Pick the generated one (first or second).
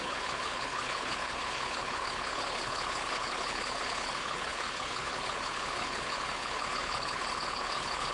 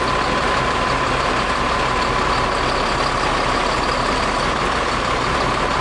first